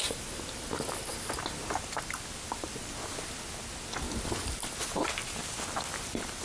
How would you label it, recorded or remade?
recorded